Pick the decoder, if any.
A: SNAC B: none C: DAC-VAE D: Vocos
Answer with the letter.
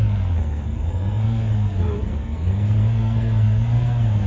A